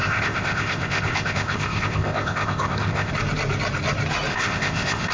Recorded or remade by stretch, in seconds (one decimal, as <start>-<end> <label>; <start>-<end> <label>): 0.0-3.1 remade; 3.1-4.3 recorded; 4.3-5.1 remade